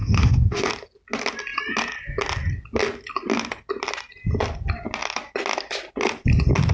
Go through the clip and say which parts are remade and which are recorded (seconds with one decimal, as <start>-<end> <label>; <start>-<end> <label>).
0.0-0.7 remade; 0.7-6.7 recorded